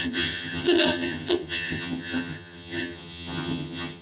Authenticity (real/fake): fake